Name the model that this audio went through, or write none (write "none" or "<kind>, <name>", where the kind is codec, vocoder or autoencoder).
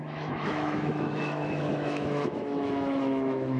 autoencoder, DAC-VAE